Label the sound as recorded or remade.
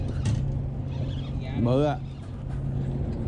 recorded